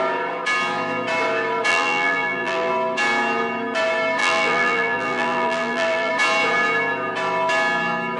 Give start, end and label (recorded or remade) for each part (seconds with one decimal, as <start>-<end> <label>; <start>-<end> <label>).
0.0-1.7 recorded; 1.7-2.7 remade; 2.7-4.2 recorded; 4.2-6.1 remade; 6.1-8.2 recorded